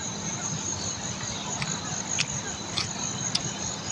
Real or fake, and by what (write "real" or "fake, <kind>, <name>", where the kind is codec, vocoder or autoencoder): real